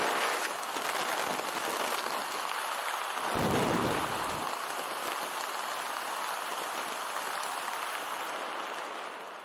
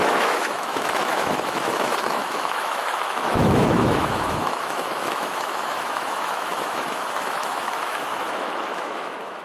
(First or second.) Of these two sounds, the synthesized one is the second